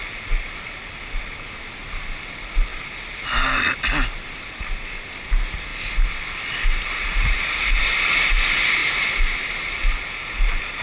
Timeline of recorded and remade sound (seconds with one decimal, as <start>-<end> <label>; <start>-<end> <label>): 0.0-6.9 recorded; 6.9-7.7 remade; 7.7-10.8 recorded